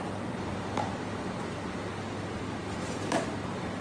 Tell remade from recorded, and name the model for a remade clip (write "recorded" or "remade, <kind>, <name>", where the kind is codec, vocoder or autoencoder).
recorded